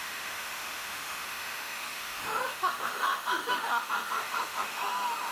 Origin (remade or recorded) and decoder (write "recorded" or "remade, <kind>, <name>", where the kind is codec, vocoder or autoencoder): remade, autoencoder, DAC-VAE